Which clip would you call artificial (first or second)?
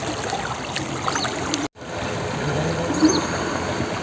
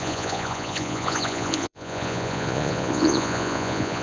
second